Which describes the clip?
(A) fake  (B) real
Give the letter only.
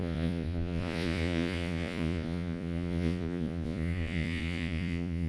A